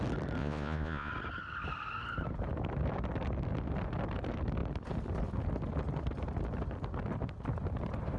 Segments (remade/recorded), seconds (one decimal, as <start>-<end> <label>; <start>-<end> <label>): 0.0-0.4 recorded; 0.4-1.1 remade; 1.1-8.2 recorded